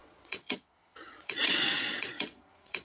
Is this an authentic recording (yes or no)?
no